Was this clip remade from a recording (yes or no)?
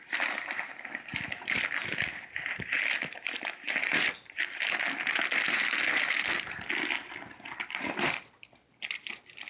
no